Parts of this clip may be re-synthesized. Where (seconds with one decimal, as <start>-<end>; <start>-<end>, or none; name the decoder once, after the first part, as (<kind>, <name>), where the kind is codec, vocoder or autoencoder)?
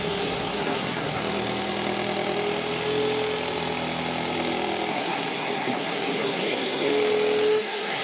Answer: 0.0-1.2 (codec, SNAC); 4.9-6.9; 7.6-8.0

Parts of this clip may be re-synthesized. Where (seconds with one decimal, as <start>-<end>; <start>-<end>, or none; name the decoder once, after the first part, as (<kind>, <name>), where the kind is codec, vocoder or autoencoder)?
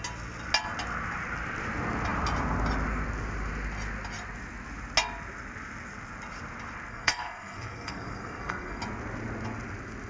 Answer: 6.9-8.8 (codec, SNAC)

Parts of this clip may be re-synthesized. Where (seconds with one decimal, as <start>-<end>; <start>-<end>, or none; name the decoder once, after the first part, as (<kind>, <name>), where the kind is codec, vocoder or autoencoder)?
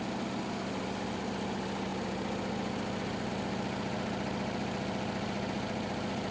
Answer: none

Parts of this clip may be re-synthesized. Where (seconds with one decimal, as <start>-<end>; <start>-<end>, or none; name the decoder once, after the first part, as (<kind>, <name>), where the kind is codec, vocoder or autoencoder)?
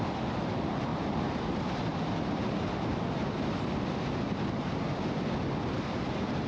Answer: 1.9-2.9 (vocoder, BigVGAN v2)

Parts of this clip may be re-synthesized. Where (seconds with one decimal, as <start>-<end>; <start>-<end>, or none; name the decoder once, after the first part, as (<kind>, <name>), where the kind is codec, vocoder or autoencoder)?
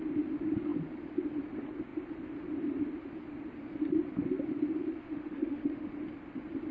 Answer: 5.0-5.9 (autoencoder, DAC-VAE)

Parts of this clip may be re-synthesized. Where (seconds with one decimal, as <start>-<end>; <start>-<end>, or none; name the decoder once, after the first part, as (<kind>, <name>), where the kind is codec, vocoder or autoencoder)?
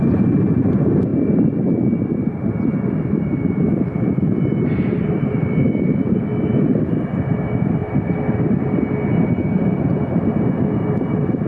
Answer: none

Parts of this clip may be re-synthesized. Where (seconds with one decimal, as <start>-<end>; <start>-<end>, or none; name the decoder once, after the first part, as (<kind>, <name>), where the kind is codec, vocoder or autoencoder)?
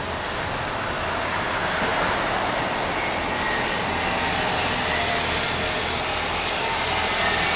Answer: none